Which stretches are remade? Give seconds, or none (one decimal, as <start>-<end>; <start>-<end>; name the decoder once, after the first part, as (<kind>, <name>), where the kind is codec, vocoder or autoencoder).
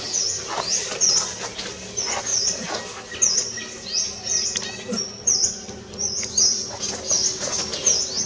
none